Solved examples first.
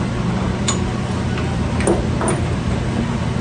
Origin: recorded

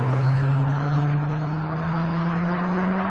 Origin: remade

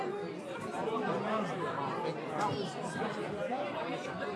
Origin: recorded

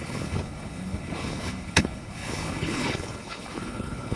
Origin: remade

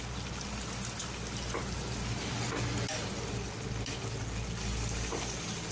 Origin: recorded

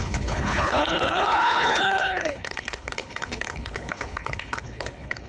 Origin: remade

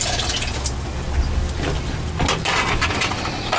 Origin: recorded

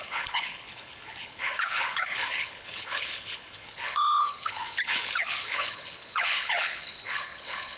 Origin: remade